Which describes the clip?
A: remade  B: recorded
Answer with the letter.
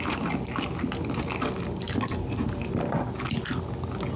B